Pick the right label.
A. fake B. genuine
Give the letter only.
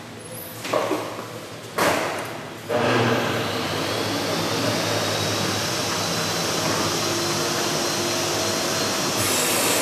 B